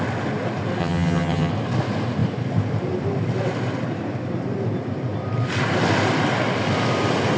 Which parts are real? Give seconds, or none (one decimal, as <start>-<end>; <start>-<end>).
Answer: 0.0-0.8; 1.5-7.4

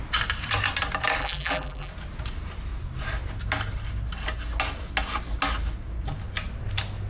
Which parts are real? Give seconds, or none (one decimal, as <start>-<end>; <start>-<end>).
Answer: 0.0-1.2; 1.9-7.1

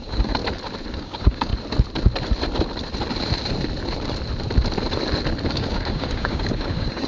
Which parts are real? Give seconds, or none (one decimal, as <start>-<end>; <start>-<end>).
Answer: 0.4-0.9; 1.5-5.5

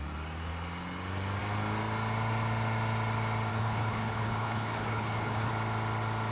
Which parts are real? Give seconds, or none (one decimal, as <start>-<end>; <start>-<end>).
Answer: 0.0-3.5; 5.5-6.3

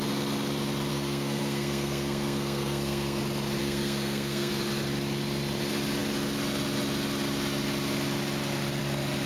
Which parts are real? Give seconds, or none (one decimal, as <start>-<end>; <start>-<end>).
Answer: 0.0-0.9; 3.2-3.6; 4.5-9.3

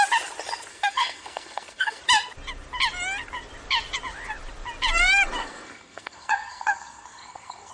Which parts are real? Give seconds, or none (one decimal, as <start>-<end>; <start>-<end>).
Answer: 0.0-0.7; 2.0-5.4

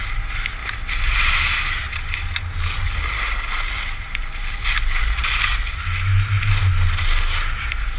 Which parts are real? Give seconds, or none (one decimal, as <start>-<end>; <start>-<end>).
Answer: 0.0-8.0